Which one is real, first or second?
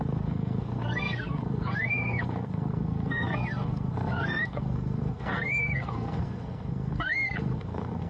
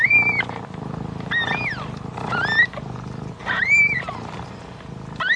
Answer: second